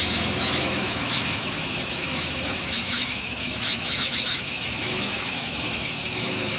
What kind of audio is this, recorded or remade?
remade